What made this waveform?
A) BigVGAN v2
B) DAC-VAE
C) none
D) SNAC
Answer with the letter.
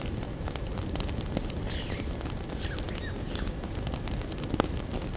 C